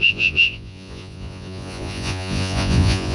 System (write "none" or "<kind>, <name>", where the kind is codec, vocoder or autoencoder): vocoder, Vocos